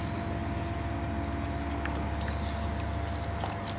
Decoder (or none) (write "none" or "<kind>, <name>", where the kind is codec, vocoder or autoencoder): none